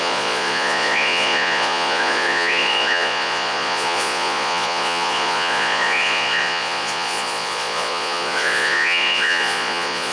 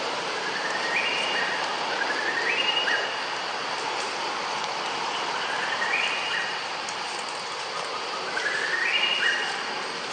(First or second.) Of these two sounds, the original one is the second